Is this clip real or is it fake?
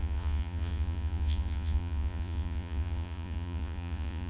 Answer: fake